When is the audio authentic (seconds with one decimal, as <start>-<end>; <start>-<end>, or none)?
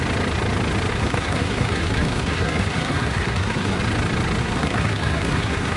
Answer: 0.0-0.9; 3.8-4.4